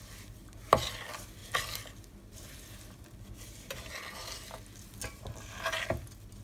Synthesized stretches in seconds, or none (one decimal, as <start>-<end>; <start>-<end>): none